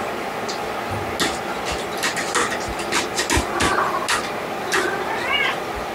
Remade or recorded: recorded